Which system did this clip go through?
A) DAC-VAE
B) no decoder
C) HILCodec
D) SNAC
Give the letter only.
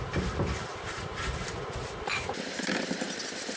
B